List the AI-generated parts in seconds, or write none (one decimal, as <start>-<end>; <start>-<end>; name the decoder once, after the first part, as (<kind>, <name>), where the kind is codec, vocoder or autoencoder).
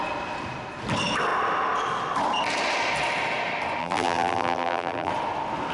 3.8-5.1 (vocoder, BigVGAN v2)